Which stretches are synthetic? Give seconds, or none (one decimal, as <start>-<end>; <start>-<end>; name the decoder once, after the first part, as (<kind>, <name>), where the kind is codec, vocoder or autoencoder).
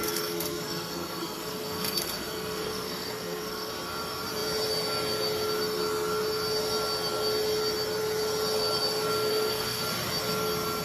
0.0-3.7 (codec, SNAC); 9.3-9.8